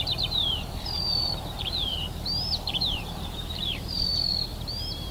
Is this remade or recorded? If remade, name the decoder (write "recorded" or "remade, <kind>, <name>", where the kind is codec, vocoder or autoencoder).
remade, vocoder, BigVGAN v2